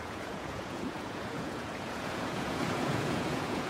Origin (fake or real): fake